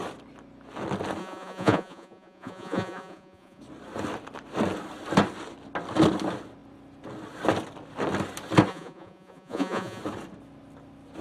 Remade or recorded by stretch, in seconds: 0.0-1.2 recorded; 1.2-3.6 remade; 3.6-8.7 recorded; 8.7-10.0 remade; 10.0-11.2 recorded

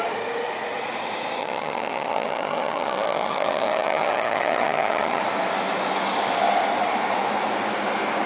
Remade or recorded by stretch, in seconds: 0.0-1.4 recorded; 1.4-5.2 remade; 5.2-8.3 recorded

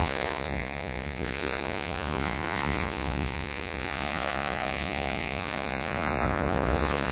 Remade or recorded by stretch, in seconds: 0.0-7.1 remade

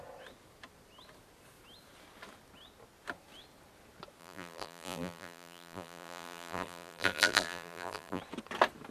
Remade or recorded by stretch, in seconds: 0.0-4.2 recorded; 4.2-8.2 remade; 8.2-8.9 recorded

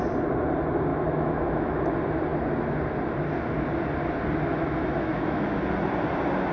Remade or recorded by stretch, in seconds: 0.0-0.9 recorded; 0.9-1.8 remade; 1.8-4.5 recorded; 4.5-5.6 remade; 5.6-6.5 recorded

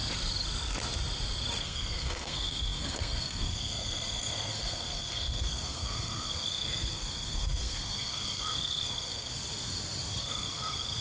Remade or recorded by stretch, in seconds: 0.0-1.6 recorded; 1.6-9.3 remade; 9.3-10.2 recorded; 10.2-11.0 remade

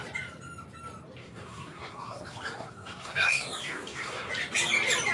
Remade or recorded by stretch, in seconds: 0.0-1.2 recorded; 1.2-4.3 remade; 4.3-5.1 recorded

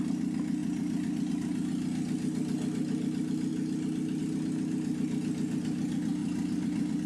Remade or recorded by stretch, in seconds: 0.0-7.1 recorded